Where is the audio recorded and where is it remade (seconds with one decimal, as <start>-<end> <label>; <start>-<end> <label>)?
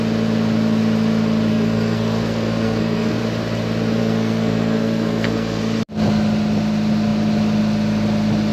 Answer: 0.0-1.5 recorded; 1.5-3.2 remade; 3.2-4.0 recorded; 4.0-5.6 remade; 5.6-8.5 recorded